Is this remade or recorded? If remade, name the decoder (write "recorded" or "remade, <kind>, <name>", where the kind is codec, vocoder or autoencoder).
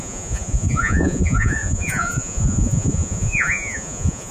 remade, vocoder, Vocos